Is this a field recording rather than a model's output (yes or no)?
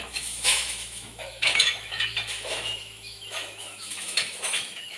no